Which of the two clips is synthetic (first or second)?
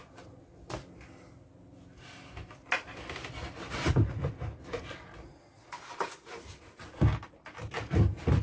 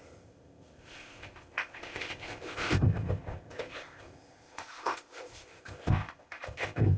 second